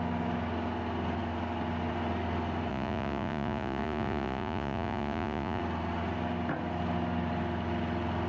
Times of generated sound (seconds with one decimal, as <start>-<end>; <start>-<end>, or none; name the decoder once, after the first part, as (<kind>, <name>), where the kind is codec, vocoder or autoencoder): 2.7-5.6 (vocoder, Vocos)